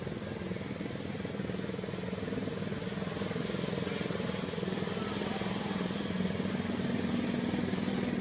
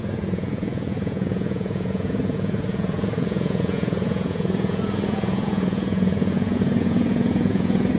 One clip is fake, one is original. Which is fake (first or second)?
second